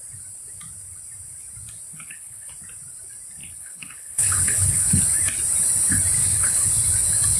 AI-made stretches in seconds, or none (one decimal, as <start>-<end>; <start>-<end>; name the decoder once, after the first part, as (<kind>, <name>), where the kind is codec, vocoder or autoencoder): 1.9-2.5 (codec, HILCodec); 3.4-5.0; 6.2-6.7